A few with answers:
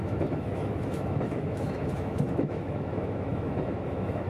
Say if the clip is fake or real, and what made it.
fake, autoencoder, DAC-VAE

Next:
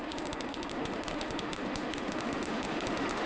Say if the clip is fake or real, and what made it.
fake, autoencoder, DAC-VAE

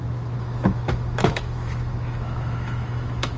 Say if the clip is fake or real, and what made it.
fake, autoencoder, DAC-VAE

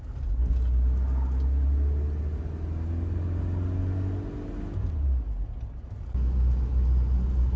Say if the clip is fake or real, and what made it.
real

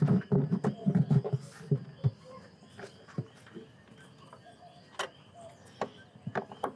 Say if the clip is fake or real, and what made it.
real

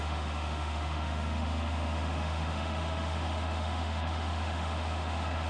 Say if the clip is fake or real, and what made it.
fake, autoencoder, DAC-VAE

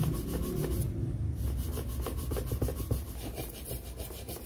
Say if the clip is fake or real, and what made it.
real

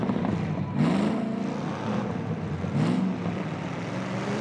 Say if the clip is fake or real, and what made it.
real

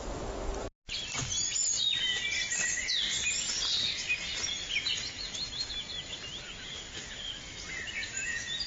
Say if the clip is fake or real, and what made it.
real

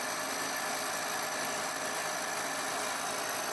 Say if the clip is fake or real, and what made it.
real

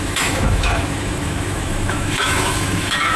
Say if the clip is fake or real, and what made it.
fake, autoencoder, DAC-VAE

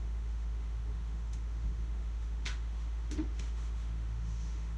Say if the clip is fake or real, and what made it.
fake, autoencoder, DAC-VAE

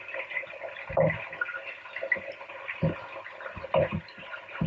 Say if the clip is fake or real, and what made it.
real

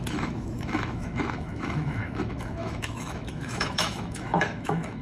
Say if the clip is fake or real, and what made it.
fake, autoencoder, DAC-VAE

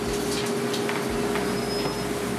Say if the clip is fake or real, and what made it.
real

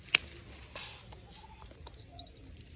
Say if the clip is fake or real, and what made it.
real